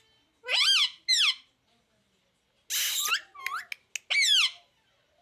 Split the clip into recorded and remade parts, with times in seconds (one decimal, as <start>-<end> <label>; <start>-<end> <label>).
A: 0.0-5.2 recorded